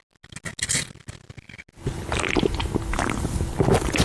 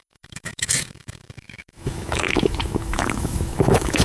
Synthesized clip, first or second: second